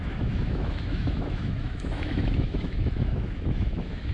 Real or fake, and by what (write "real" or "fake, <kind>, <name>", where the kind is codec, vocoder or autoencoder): fake, autoencoder, DAC-VAE